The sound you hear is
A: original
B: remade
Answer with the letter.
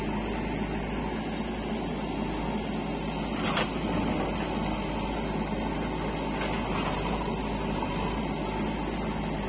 A